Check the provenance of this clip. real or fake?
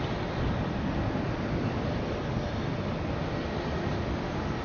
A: real